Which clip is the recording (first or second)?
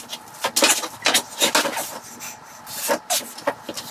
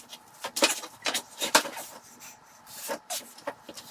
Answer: first